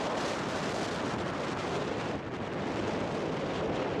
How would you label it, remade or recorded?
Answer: recorded